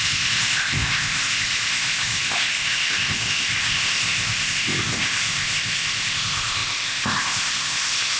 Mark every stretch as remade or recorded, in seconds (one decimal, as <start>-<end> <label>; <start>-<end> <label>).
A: 0.0-8.2 remade